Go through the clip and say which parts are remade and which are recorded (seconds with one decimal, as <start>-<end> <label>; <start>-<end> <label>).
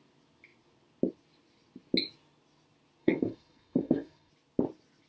0.0-3.0 recorded; 3.0-4.3 remade; 4.3-5.1 recorded